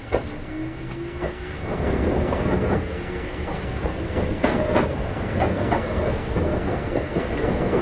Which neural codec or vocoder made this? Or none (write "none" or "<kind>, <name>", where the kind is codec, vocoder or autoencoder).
codec, SNAC